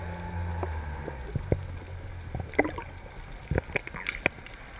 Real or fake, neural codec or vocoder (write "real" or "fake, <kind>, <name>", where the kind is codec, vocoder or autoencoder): real